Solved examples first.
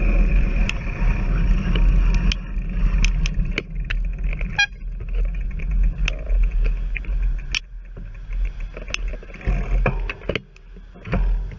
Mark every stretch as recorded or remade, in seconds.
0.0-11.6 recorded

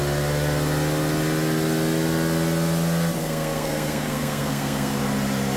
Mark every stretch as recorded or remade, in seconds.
0.0-3.2 recorded; 3.2-5.0 remade; 5.0-5.6 recorded

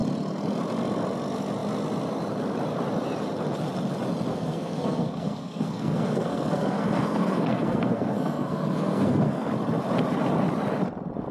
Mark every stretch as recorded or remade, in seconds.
0.0-4.3 recorded; 4.3-9.5 remade; 9.5-11.3 recorded

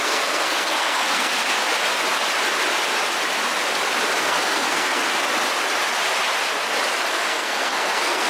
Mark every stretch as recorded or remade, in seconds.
0.0-1.6 remade; 1.6-4.2 recorded; 4.2-5.1 remade; 5.1-7.1 recorded; 7.1-8.3 remade

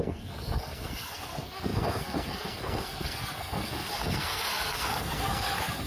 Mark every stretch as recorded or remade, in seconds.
0.0-5.9 remade

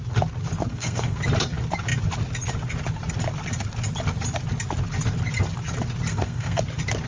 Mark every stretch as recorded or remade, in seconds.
0.0-0.7 recorded; 0.7-1.2 remade; 1.2-6.1 recorded; 6.1-6.6 remade; 6.6-7.1 recorded